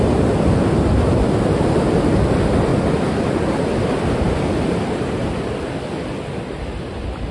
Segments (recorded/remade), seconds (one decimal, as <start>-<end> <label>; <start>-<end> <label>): 0.0-7.3 recorded